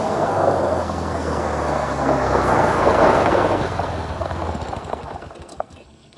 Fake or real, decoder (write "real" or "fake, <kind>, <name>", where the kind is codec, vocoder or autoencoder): fake, codec, SNAC